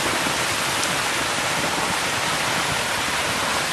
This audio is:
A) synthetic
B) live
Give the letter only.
B